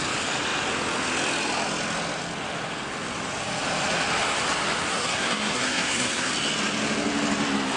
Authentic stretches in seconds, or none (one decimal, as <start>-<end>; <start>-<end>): 0.0-4.9; 6.3-7.8